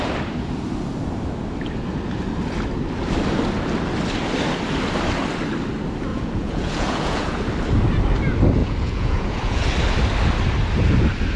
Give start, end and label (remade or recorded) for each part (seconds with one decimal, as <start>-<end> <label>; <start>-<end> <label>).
0.0-6.1 recorded; 6.1-7.4 remade; 7.4-8.6 recorded; 8.6-9.7 remade; 9.7-11.4 recorded

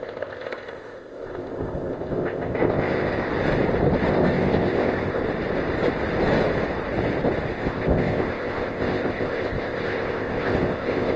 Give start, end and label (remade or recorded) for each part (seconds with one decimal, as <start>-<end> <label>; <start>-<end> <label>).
0.0-3.3 remade; 3.3-4.1 recorded; 4.1-5.2 remade; 5.2-7.5 recorded; 7.5-11.2 remade